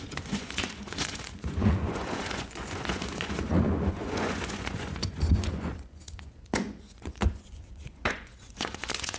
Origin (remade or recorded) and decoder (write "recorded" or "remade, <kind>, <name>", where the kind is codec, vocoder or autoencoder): remade, vocoder, Vocos